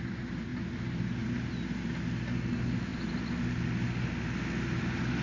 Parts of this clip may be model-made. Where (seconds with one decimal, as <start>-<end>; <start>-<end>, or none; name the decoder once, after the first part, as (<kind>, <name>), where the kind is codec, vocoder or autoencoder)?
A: none